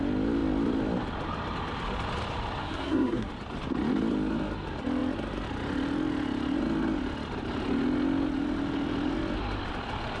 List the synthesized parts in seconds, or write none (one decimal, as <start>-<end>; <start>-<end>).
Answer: 2.6-3.3